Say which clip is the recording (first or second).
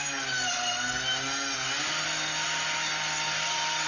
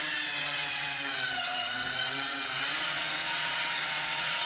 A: first